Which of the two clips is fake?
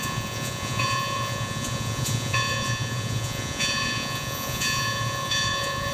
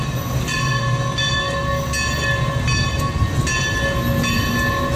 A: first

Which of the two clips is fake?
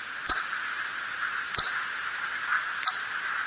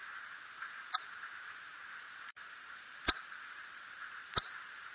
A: second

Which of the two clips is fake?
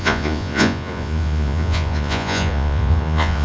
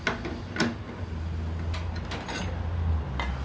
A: first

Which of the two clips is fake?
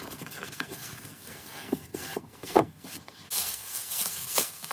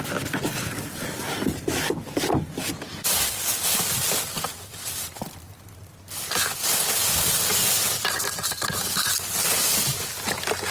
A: first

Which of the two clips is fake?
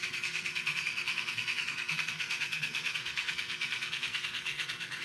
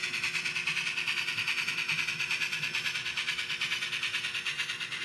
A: first